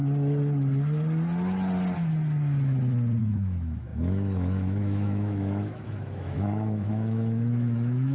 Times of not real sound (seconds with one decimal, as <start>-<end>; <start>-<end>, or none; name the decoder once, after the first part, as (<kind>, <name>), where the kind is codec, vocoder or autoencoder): 3.2-8.1 (autoencoder, DAC-VAE)